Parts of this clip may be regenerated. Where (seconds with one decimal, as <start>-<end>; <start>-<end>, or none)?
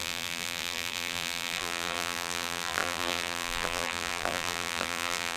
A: 0.0-5.4